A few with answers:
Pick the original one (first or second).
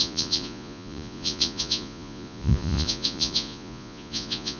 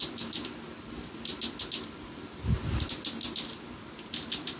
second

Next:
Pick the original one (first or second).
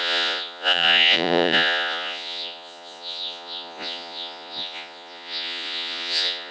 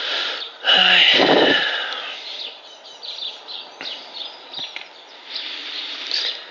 second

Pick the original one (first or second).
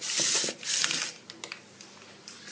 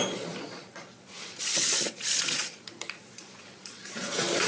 first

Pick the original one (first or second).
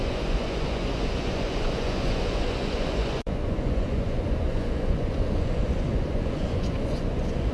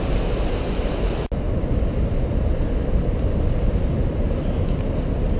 second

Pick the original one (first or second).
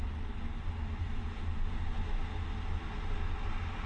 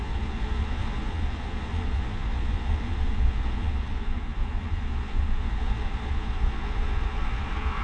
first